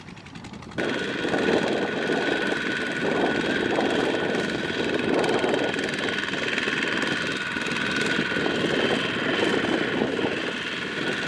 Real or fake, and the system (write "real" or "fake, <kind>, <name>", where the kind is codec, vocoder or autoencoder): real